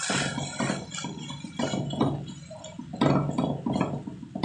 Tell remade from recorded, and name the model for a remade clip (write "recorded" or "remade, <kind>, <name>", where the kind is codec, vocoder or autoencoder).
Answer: recorded